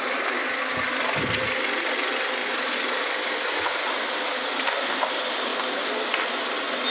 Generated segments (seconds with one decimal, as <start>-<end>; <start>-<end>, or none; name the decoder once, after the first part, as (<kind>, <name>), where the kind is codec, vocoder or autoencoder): 5.5-6.3 (vocoder, BigVGAN v2)